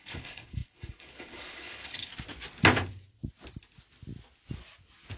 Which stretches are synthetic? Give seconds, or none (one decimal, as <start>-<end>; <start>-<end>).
0.0-2.1